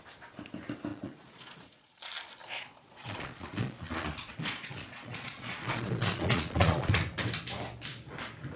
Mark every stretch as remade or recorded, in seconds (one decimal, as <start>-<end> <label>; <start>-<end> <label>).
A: 0.0-0.9 recorded; 0.9-2.0 remade; 2.0-2.4 recorded; 2.4-7.0 remade; 7.0-8.6 recorded